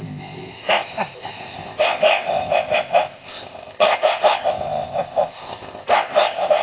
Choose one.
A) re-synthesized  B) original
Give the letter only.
A